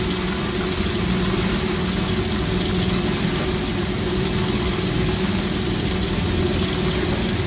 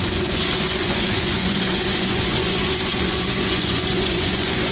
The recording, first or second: first